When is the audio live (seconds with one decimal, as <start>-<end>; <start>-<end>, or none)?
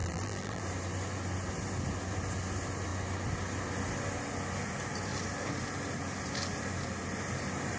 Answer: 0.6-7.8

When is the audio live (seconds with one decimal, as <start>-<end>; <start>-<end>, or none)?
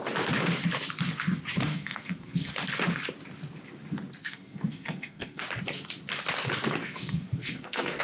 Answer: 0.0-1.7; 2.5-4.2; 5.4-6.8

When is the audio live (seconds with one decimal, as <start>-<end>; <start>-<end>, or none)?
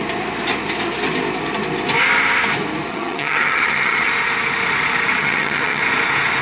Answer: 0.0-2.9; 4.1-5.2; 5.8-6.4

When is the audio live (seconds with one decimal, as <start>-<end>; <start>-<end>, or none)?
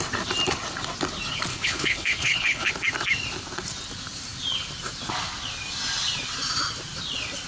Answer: 0.0-1.5; 2.7-7.5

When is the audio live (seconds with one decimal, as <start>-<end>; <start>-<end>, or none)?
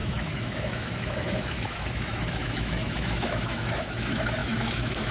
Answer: none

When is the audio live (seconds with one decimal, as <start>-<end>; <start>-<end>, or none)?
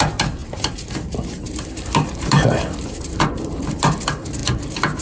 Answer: 4.4-5.0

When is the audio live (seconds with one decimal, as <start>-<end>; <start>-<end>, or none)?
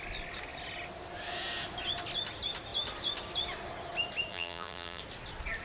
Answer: 0.0-4.3; 5.0-5.6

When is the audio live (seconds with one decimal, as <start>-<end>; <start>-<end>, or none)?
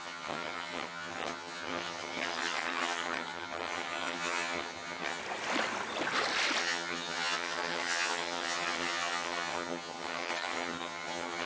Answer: 5.2-6.6